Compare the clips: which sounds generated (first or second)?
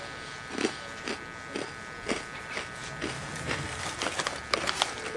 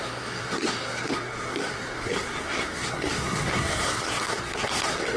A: second